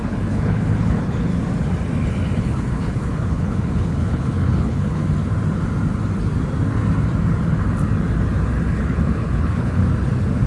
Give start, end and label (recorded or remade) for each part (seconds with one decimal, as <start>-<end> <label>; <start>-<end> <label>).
0.0-1.3 remade; 1.3-2.4 recorded; 2.4-5.0 remade; 5.0-8.7 recorded; 8.7-9.8 remade; 9.8-10.5 recorded